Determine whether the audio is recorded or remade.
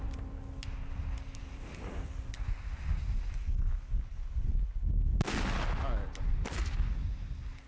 recorded